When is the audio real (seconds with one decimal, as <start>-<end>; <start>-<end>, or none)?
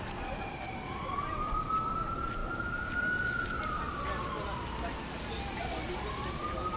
0.0-6.8